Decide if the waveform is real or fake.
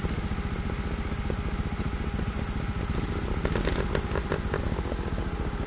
real